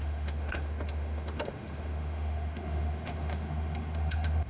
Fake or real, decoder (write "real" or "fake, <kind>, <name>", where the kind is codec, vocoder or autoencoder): fake, autoencoder, DAC-VAE